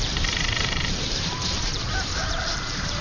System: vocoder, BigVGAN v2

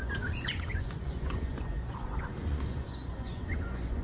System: vocoder, Vocos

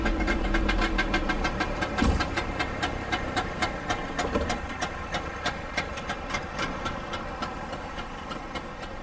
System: vocoder, BigVGAN v2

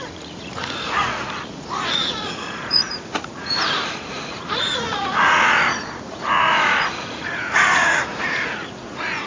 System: vocoder, Vocos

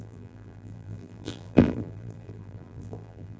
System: vocoder, BigVGAN v2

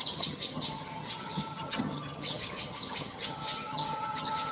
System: vocoder, HiFi-GAN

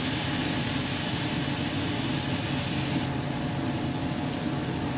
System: none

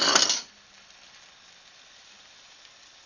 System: none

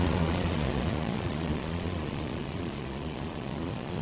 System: vocoder, Vocos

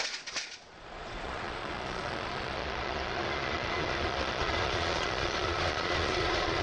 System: vocoder, Vocos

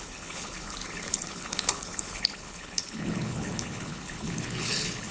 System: codec, HILCodec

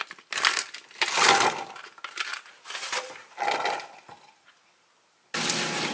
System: none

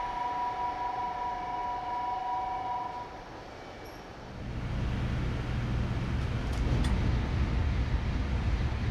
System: none